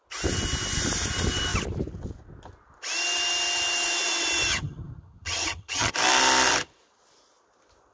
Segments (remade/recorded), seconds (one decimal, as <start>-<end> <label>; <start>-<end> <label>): 0.0-4.5 recorded; 4.5-5.9 remade; 5.9-7.9 recorded